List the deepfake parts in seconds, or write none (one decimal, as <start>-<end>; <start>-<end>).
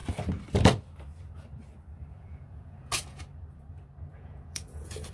2.1-3.2; 4.1-5.1